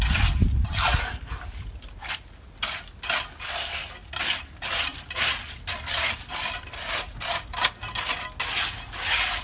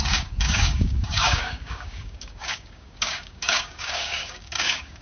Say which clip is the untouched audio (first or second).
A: first